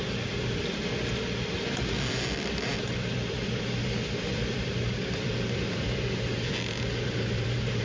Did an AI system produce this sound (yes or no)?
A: yes